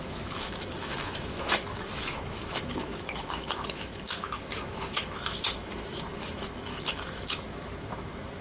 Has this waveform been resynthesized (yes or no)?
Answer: yes